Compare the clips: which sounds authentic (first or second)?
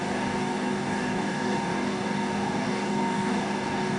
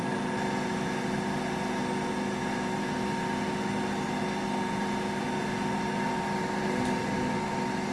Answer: second